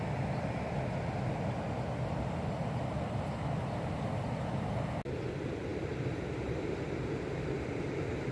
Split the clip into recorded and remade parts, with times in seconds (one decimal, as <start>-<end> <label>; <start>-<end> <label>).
0.0-8.3 recorded